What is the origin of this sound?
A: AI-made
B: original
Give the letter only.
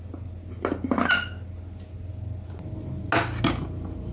B